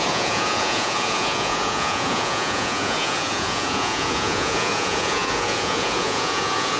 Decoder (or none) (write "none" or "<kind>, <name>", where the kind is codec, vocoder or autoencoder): vocoder, Vocos